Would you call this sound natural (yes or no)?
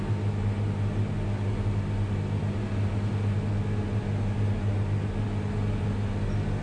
yes